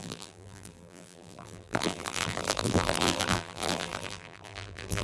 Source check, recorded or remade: remade